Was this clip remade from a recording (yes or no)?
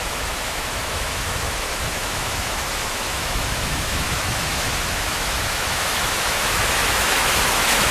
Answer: yes